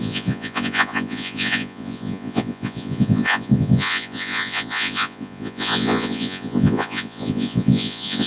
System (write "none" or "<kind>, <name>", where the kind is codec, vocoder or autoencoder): vocoder, Vocos